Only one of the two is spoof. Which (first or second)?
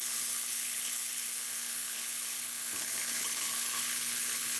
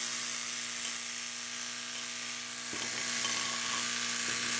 first